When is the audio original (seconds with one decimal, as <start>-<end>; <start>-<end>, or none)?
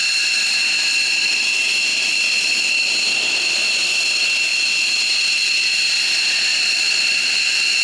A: 0.0-1.9; 2.7-6.5